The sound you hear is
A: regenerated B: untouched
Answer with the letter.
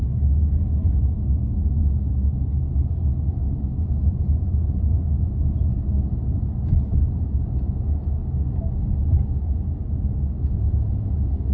B